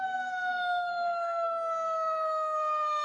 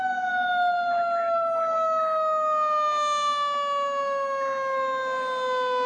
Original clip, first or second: second